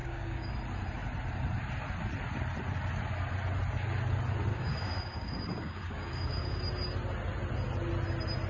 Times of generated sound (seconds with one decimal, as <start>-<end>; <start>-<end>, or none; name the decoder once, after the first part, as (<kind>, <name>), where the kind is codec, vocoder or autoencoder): 0.0-0.5 (codec, DAC); 4.5-6.6